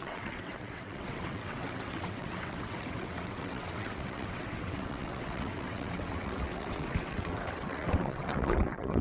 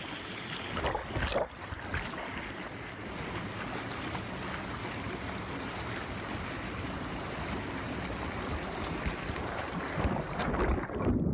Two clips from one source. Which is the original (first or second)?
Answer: second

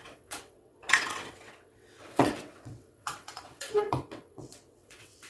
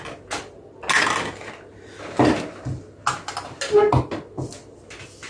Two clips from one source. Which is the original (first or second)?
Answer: second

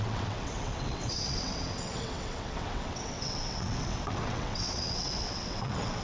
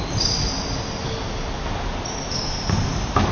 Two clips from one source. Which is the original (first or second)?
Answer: second